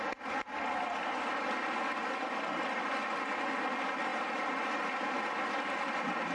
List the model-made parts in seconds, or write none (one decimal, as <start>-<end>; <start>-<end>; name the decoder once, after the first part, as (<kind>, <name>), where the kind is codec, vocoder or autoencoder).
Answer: 2.0-2.6 (vocoder, BigVGAN v2); 4.1-4.7